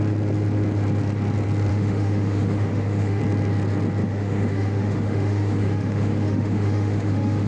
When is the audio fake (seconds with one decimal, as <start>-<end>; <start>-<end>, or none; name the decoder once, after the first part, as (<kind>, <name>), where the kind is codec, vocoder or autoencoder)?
1.7-3.2 (autoencoder, DAC-VAE); 4.0-7.5